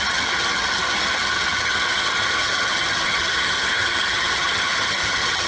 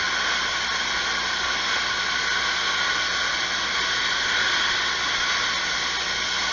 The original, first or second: second